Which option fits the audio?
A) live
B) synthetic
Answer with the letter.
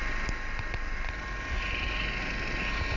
A